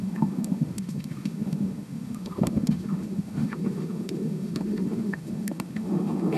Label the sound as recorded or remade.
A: remade